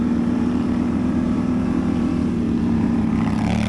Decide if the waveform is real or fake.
fake